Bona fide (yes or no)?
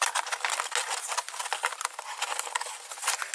yes